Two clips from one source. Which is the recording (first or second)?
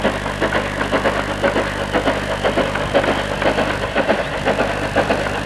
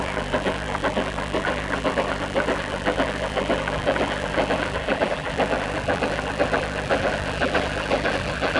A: first